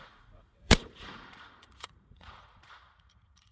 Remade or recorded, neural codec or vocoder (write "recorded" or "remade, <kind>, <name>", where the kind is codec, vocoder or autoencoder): remade, vocoder, Vocos